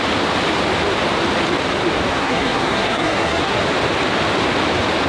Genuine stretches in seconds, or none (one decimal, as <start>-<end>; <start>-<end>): 0.0-2.2; 3.6-5.1